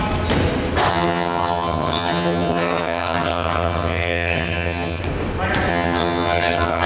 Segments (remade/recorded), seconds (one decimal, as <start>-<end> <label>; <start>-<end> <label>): 0.0-0.9 recorded; 0.9-5.0 remade; 5.0-5.7 recorded; 5.7-6.9 remade